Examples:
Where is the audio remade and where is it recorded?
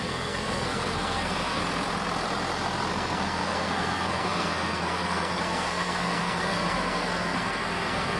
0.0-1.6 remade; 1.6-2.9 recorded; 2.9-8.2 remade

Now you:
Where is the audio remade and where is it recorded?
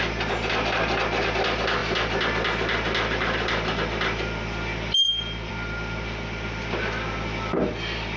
0.0-8.2 recorded